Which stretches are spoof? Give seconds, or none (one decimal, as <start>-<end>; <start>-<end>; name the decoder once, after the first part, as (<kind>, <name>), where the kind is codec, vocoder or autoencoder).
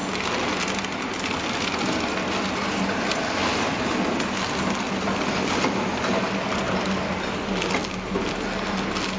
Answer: none